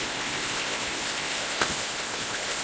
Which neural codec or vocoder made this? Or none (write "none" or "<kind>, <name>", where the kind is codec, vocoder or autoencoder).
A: codec, ZipCodec